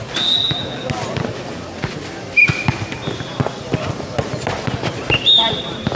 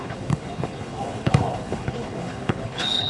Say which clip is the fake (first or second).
second